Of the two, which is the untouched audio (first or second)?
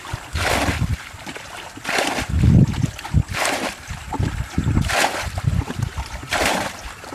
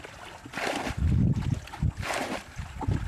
second